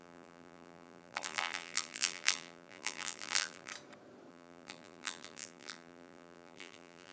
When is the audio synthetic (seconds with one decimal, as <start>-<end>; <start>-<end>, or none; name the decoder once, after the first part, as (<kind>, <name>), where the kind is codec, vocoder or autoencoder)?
0.0-3.7 (vocoder, BigVGAN v2); 4.3-7.1